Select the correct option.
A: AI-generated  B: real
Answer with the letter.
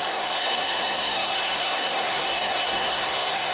A